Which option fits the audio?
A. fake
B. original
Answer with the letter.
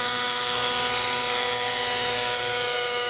A